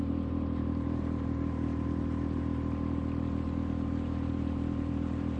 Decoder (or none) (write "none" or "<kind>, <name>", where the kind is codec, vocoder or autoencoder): vocoder, BigVGAN v2